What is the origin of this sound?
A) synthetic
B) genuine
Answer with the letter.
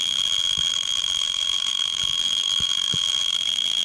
A